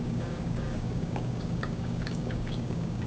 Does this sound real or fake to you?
fake